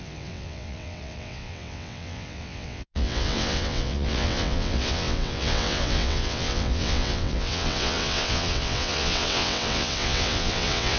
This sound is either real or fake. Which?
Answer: fake